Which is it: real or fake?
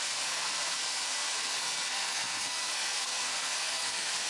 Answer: fake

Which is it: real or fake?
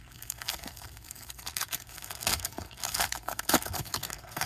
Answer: fake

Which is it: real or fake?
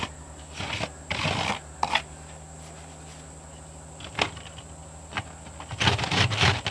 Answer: real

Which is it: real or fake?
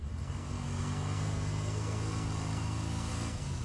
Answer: fake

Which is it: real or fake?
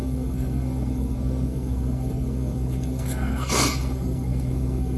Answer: fake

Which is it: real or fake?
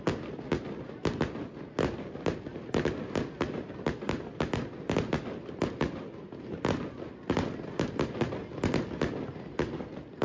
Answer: real